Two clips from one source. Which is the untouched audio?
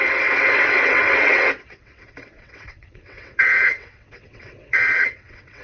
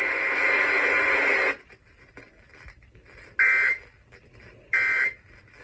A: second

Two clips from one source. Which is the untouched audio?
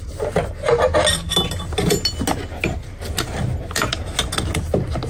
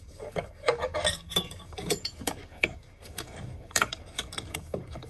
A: first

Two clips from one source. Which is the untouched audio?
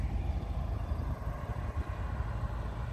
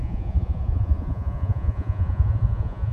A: first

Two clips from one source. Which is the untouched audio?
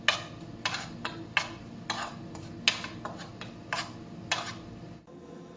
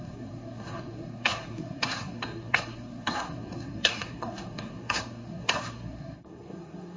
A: first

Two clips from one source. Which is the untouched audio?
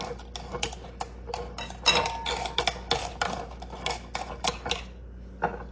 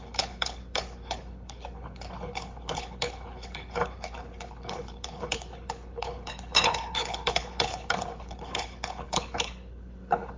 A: first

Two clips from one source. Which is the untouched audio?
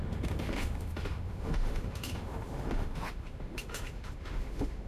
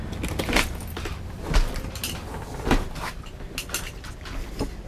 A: second